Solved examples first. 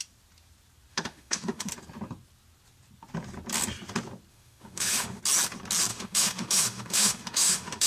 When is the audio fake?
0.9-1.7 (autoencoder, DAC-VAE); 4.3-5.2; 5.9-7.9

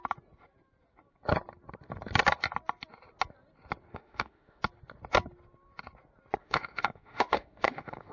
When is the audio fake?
3.9-4.6 (autoencoder, DAC-VAE); 6.4-8.1

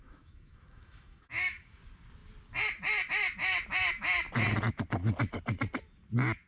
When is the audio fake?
0.0-1.8 (autoencoder, DAC-VAE)